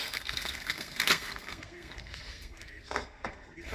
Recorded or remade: remade